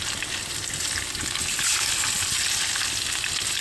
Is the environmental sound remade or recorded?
recorded